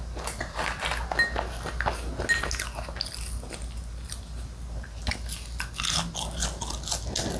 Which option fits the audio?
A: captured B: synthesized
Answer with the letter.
A